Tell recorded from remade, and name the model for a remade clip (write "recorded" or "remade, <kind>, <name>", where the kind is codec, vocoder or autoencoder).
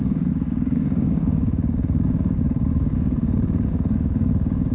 remade, codec, DAC